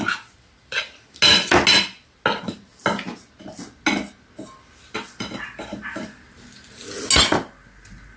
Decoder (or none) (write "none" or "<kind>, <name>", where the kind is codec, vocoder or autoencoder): none